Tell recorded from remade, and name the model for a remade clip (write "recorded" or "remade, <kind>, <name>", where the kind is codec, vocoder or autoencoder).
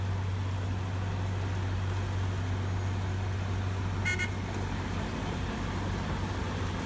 recorded